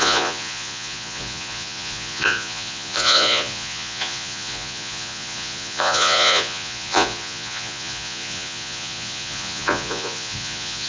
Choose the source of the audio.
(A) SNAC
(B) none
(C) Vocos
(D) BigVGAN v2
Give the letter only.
C